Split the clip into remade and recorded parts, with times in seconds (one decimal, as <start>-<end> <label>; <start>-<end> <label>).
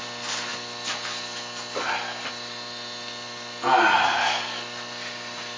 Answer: 0.0-5.6 recorded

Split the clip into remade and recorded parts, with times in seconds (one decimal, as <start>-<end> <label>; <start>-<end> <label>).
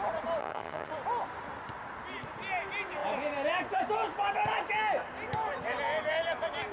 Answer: 0.0-0.4 recorded; 0.4-0.9 remade; 0.9-6.7 recorded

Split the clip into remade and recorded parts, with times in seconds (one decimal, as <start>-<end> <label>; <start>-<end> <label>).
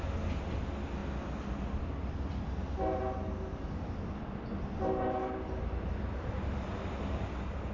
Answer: 0.0-7.7 recorded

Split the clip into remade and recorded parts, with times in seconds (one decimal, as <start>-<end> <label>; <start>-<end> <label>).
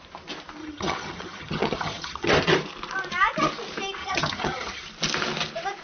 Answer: 0.0-0.6 recorded; 0.6-2.3 remade; 2.3-4.0 recorded; 4.0-4.8 remade; 4.8-5.8 recorded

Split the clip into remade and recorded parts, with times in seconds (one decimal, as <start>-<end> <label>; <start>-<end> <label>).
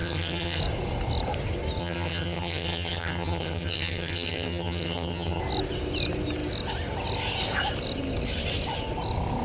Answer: 0.0-0.6 remade; 0.6-1.8 recorded; 1.8-5.4 remade; 5.4-9.4 recorded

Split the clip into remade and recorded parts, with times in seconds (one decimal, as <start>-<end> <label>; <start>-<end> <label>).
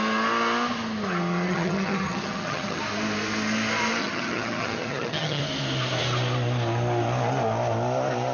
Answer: 0.0-1.5 recorded; 1.5-2.8 remade; 2.8-4.0 recorded; 4.0-5.4 remade; 5.4-8.3 recorded